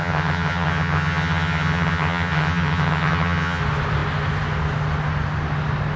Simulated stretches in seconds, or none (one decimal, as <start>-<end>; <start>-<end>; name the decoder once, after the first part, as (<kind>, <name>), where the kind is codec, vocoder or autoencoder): 0.0-3.6 (vocoder, HiFi-GAN)